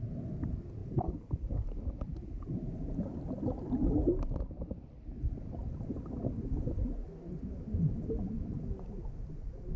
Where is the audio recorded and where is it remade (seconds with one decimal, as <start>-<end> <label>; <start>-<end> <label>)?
0.0-9.8 recorded